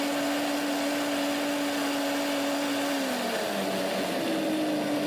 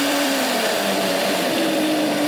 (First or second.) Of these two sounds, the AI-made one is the second